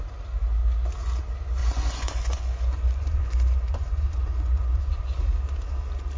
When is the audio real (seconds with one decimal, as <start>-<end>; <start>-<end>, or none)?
0.0-1.6; 5.2-6.2